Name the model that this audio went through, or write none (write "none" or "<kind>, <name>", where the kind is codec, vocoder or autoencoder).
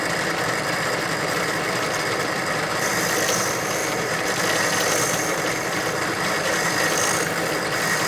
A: vocoder, BigVGAN v2